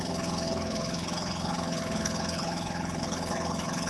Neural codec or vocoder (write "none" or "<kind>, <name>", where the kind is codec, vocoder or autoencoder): codec, HILCodec